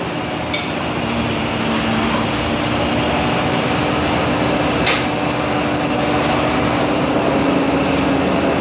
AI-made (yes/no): no